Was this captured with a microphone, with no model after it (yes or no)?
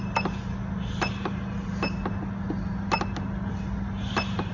yes